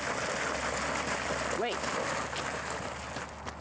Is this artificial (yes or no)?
no